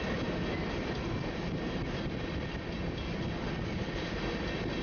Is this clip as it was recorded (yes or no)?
yes